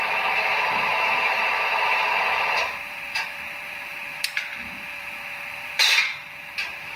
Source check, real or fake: fake